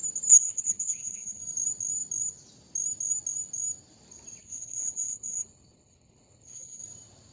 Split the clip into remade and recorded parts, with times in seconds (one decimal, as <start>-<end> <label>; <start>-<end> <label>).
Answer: 0.0-0.4 recorded; 0.4-1.4 remade; 1.4-4.4 recorded; 4.4-6.8 remade; 6.8-7.3 recorded

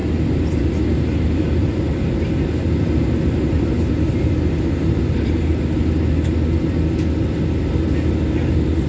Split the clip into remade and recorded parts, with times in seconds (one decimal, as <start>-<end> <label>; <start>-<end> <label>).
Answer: 0.0-8.9 recorded

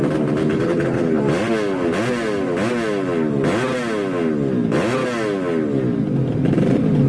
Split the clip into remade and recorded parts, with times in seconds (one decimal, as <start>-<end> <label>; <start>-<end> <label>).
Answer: 0.0-0.4 recorded; 0.4-1.2 remade; 1.2-7.1 recorded

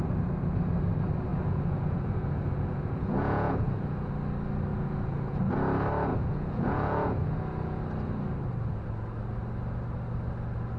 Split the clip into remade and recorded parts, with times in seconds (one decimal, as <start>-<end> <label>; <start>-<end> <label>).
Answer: 0.0-1.3 recorded; 1.3-4.1 remade; 4.1-4.7 recorded; 4.7-5.5 remade; 5.5-6.1 recorded; 6.1-7.8 remade; 7.8-10.8 recorded

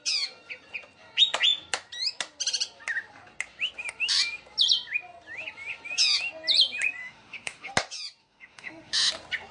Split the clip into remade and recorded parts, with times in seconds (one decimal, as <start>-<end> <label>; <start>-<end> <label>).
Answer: 0.0-7.0 recorded; 7.0-7.7 remade; 7.7-8.2 recorded; 8.2-9.1 remade; 9.1-9.5 recorded

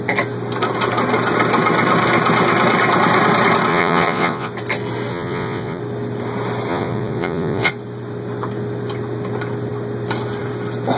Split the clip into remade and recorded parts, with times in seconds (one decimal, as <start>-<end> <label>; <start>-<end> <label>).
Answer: 0.0-3.7 recorded; 3.7-4.5 remade; 4.5-5.1 recorded; 5.1-5.8 remade; 5.8-6.7 recorded; 6.7-7.7 remade; 7.7-11.0 recorded

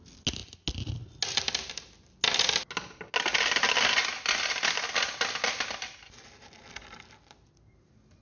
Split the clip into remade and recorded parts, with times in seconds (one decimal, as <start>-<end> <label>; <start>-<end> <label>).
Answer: 0.0-8.2 recorded

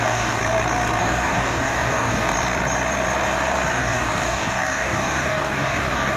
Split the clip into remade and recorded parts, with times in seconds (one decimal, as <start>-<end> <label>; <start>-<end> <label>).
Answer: 0.0-0.4 remade; 0.4-1.0 recorded; 1.0-2.3 remade; 2.3-3.7 recorded; 3.7-6.2 remade